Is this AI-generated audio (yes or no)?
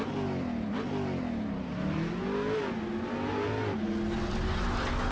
no